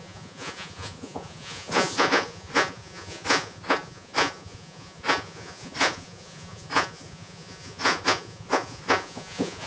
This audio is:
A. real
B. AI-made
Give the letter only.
B